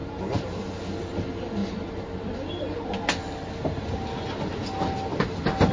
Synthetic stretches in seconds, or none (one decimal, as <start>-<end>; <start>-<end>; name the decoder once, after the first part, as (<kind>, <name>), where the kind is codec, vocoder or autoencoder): none